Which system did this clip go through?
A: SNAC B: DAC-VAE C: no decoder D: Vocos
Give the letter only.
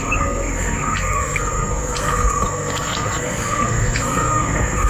A